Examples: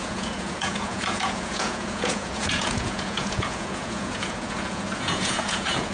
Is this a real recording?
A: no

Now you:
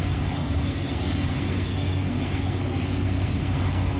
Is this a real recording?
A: no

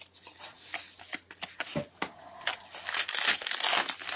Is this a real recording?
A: yes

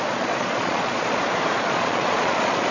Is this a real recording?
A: no